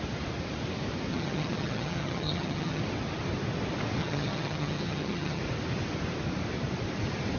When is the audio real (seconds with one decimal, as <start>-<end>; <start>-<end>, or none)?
0.0-1.1; 2.8-4.0; 5.4-7.4